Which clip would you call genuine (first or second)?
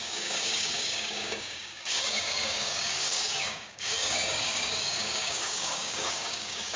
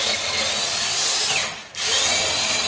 second